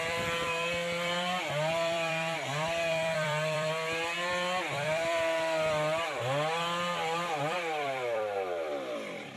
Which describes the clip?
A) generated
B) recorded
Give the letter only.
A